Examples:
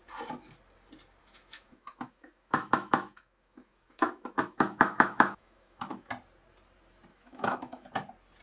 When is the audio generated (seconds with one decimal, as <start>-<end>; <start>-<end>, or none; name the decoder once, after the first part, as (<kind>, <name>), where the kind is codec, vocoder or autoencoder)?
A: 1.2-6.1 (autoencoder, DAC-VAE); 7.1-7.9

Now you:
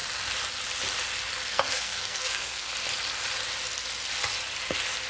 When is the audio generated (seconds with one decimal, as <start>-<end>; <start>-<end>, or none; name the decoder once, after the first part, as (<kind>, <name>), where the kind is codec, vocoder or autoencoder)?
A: 1.5-2.7 (codec, SNAC)

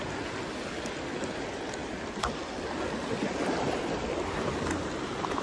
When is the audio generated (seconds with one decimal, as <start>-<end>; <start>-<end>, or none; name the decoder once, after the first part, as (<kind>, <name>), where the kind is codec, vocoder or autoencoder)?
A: none

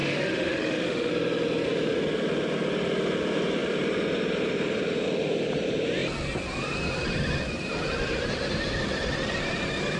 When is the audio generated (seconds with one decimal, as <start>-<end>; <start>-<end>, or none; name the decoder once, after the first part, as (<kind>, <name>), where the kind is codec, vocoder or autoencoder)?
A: 0.0-1.1 (autoencoder, DAC-VAE)

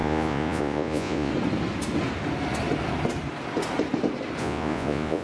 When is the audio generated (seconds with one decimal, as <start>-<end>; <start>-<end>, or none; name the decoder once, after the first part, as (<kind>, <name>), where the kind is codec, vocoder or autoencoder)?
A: 0.0-1.3 (vocoder, Vocos); 4.4-5.2